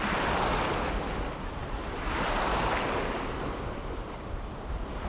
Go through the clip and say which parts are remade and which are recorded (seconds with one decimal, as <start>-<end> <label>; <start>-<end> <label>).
0.0-1.6 recorded; 1.6-2.7 remade; 2.7-3.8 recorded; 3.8-5.1 remade